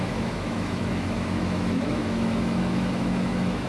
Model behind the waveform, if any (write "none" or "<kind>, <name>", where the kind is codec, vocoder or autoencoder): autoencoder, DAC-VAE